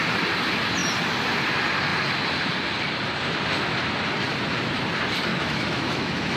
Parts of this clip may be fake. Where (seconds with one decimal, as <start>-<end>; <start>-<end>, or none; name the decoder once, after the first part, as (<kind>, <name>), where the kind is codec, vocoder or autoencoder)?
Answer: 5.3-6.4 (autoencoder, DAC-VAE)